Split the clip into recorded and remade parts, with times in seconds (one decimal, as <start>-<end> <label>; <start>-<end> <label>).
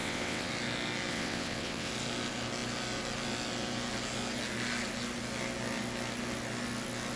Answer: 0.0-0.5 remade; 0.5-1.1 recorded; 1.1-1.9 remade; 1.9-7.2 recorded